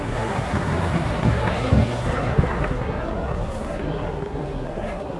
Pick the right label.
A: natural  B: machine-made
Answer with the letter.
B